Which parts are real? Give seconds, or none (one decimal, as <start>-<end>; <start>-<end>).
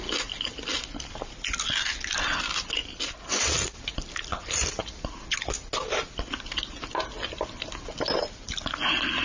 0.0-9.2